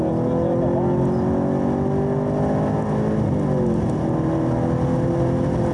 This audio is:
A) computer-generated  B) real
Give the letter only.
B